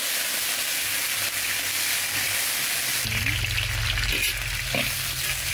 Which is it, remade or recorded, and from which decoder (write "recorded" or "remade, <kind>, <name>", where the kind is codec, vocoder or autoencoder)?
recorded